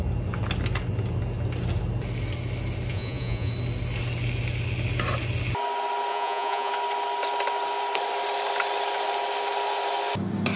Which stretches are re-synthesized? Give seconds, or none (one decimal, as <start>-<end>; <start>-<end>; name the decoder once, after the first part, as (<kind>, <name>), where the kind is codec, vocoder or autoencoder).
2.9-3.5 (vocoder, Vocos); 6.1-6.7